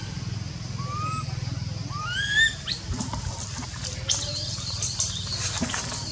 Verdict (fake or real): real